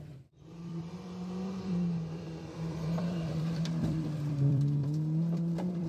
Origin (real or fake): fake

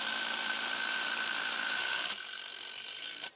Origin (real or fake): fake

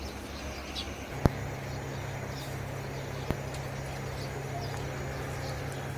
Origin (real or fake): real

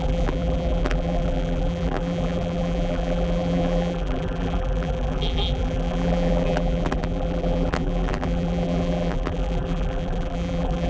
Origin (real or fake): fake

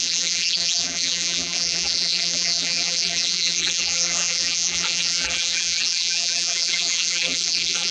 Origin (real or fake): fake